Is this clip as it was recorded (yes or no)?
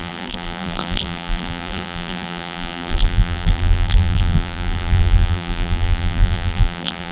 no